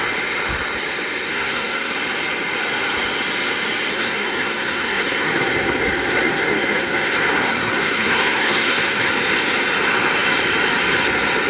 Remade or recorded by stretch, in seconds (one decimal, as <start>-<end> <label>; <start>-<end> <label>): 0.0-1.3 recorded; 1.3-1.9 remade; 1.9-3.9 recorded; 3.9-9.1 remade; 9.1-11.5 recorded